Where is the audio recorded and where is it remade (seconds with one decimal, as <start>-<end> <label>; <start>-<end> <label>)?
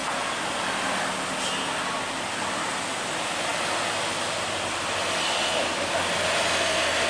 0.0-7.1 recorded